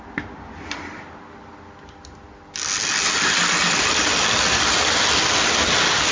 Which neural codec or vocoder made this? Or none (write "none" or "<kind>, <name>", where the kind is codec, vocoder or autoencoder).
none